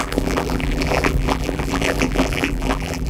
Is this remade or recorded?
remade